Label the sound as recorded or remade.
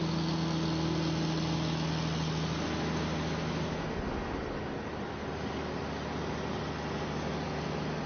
recorded